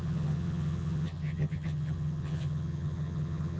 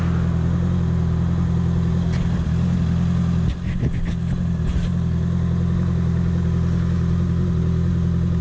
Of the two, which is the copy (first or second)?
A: first